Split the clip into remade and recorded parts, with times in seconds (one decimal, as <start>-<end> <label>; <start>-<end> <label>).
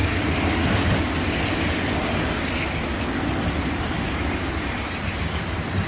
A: 0.0-5.9 recorded